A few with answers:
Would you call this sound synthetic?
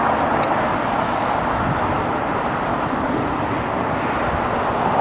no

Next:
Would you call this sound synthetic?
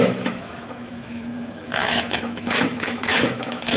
yes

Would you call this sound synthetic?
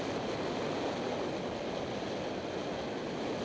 no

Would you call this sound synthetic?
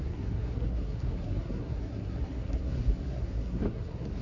yes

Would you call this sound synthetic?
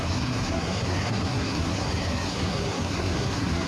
yes